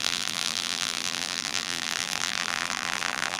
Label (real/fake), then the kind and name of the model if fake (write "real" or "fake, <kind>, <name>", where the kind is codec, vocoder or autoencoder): fake, vocoder, BigVGAN v2